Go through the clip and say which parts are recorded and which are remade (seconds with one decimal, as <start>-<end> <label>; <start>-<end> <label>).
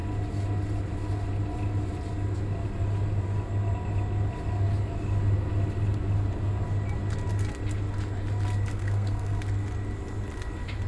0.0-8.7 recorded; 8.7-9.4 remade; 9.4-10.9 recorded